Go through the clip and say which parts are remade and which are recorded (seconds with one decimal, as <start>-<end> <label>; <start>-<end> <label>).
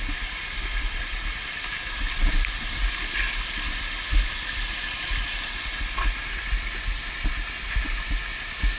0.0-8.8 recorded